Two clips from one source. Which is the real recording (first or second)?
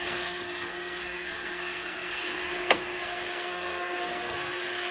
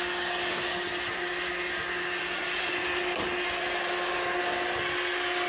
second